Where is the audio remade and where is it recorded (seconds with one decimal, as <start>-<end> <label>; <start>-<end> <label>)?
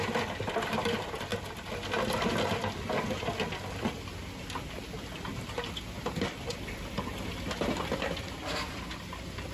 0.0-1.3 remade; 1.3-2.2 recorded; 2.2-9.5 remade